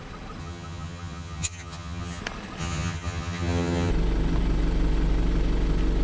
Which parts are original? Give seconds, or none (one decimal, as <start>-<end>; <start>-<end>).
0.0-0.4; 2.2-2.6; 3.9-6.0

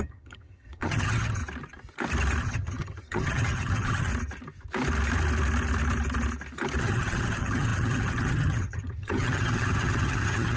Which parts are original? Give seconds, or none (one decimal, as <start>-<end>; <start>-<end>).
1.4-2.4; 4.1-6.8

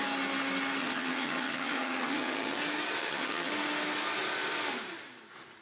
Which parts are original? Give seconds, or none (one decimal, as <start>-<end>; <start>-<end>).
0.0-0.8; 2.6-3.0; 3.5-5.6

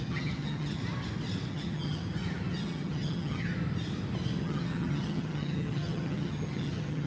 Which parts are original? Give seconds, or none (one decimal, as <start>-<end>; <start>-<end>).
0.8-1.5; 2.0-2.5; 3.5-4.4